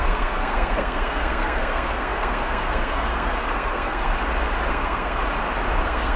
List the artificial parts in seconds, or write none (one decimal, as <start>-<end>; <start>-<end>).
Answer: 0.0-4.1; 4.7-5.2; 5.8-6.2

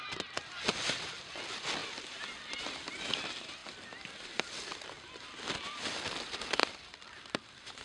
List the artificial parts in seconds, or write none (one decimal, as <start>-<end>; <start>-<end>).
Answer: 1.8-3.0; 3.6-5.1

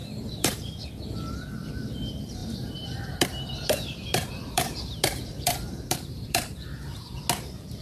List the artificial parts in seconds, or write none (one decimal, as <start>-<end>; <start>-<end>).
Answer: 0.0-0.9; 2.4-7.1

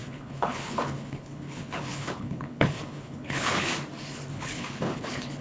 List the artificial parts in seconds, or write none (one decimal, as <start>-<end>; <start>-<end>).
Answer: 0.0-3.7; 4.3-5.4

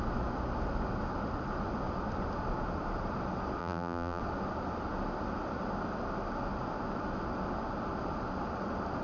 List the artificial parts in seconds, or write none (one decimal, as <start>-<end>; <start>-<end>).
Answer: 3.6-4.2

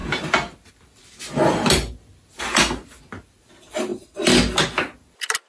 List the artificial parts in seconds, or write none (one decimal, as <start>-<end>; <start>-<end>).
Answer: none